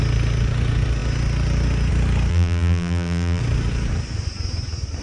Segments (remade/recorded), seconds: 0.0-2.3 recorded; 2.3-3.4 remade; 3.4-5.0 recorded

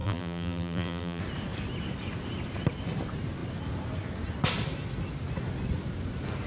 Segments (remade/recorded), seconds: 0.0-1.2 remade; 1.2-6.5 recorded

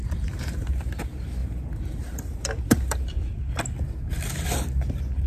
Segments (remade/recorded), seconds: 0.0-0.7 remade; 0.7-1.4 recorded; 1.4-3.6 remade; 3.6-5.3 recorded

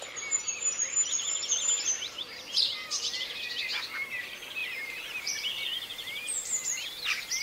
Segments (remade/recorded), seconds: 0.0-0.5 remade; 0.5-1.8 recorded; 1.8-6.6 remade; 6.6-7.4 recorded

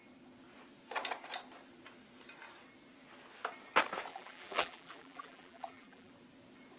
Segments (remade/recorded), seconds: 0.0-4.1 recorded; 4.1-6.1 remade; 6.1-6.8 recorded

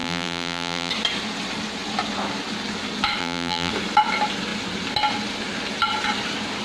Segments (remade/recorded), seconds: 0.0-0.9 remade; 0.9-3.2 recorded; 3.2-3.7 remade; 3.7-6.6 recorded

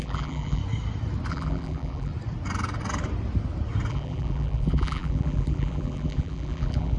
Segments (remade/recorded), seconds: 0.0-0.6 remade; 0.6-1.3 recorded; 1.3-2.1 remade; 2.1-3.9 recorded; 3.9-7.0 remade